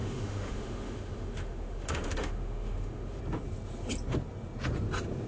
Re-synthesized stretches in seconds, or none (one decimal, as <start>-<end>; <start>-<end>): 0.0-3.2